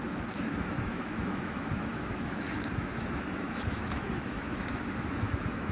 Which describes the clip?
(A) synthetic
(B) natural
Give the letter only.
A